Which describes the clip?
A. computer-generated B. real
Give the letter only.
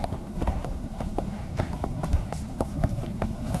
A